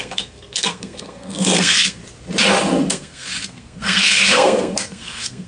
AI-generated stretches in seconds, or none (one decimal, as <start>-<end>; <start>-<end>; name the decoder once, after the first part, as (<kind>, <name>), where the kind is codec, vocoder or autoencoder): 0.0-2.0 (codec, SNAC); 2.9-5.5